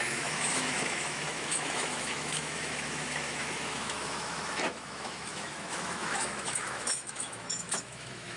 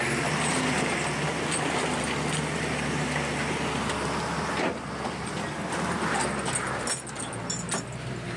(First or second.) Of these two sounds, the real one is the second